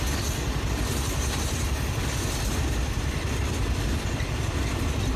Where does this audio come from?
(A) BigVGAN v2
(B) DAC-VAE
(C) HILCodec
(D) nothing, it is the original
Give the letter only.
D